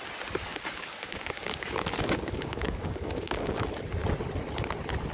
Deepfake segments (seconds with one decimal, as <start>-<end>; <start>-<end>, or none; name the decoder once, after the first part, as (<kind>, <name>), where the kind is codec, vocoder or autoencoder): 0.5-3.6 (codec, DAC)